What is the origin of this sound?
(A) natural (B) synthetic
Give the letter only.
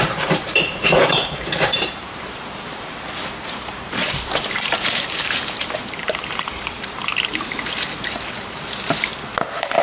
B